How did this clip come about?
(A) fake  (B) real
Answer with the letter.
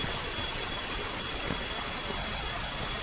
B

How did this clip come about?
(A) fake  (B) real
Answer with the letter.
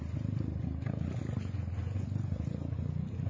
B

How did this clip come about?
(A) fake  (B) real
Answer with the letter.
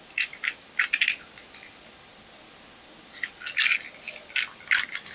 B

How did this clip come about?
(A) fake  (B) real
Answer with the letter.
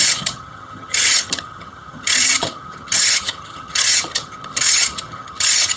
A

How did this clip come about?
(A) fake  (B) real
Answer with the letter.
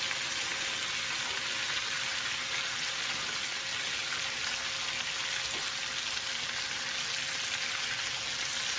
B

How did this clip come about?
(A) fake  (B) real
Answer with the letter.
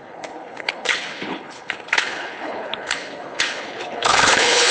A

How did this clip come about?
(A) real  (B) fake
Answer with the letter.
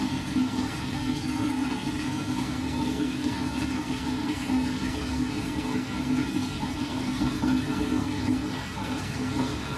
B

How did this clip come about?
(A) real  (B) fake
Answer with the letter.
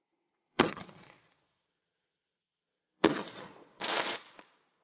B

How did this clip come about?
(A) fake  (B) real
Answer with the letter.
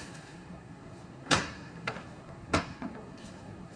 A